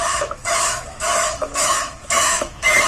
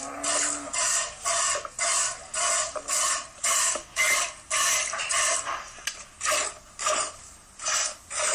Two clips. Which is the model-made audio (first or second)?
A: first